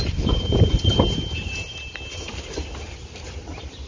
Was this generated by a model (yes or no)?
no